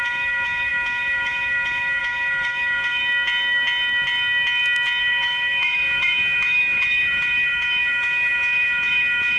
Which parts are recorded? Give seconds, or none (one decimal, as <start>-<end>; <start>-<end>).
3.0-5.0